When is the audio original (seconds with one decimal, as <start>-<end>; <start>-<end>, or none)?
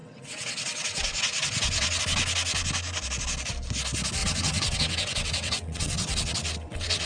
2.0-4.2